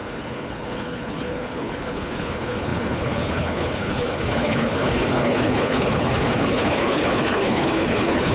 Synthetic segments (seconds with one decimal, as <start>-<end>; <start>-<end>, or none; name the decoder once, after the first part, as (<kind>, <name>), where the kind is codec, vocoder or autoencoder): 0.0-8.3 (codec, HILCodec)

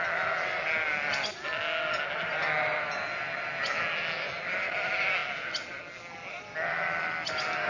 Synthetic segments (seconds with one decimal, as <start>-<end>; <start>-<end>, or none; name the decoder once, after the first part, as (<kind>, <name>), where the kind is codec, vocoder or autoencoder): none